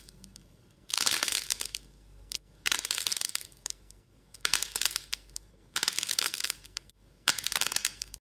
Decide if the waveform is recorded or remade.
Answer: remade